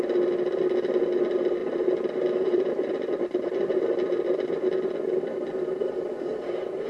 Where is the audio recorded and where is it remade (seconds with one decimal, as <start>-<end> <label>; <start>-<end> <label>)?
0.0-1.6 recorded; 1.6-3.8 remade; 3.8-6.9 recorded